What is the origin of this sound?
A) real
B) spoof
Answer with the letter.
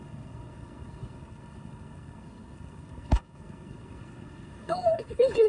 B